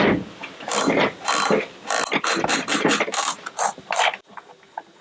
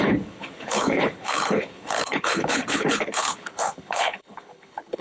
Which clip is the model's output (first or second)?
second